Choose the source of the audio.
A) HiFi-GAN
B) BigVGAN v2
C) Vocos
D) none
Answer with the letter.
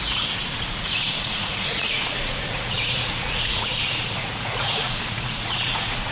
C